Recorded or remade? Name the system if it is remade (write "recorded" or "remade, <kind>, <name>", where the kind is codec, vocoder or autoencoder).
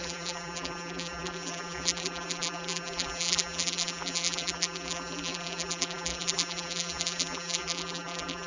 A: remade, vocoder, BigVGAN v2